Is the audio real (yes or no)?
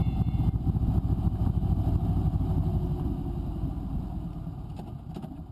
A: yes